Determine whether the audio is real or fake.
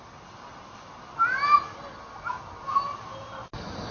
real